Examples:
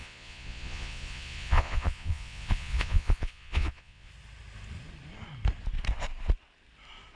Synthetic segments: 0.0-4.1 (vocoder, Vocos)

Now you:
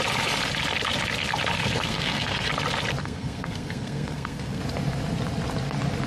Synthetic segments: 1.6-2.5 (codec, SNAC); 3.0-4.6